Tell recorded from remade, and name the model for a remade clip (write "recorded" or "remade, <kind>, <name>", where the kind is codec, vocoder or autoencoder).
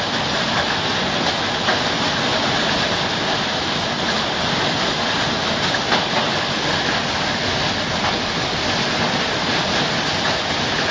recorded